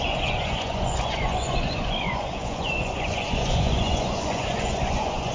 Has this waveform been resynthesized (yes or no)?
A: yes